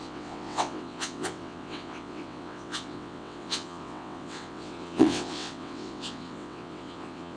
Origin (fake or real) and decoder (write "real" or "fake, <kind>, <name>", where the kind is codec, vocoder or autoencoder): fake, vocoder, WaveNeXt